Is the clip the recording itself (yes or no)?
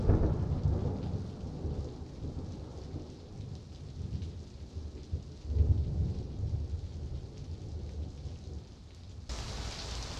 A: yes